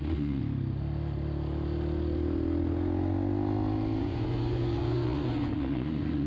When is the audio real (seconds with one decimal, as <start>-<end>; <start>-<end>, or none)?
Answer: 0.4-4.0